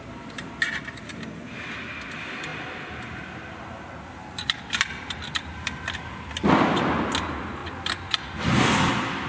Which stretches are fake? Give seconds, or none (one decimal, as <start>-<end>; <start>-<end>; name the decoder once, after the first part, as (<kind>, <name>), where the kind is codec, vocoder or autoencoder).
none